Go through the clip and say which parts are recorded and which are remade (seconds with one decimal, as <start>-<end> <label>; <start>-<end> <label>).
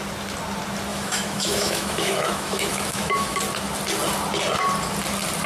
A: 0.0-0.9 recorded; 0.9-3.4 remade; 3.4-5.5 recorded